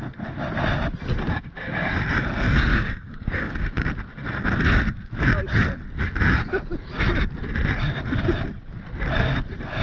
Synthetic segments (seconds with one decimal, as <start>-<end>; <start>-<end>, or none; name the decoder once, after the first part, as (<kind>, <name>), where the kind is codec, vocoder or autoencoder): 2.7-3.9 (codec, DAC)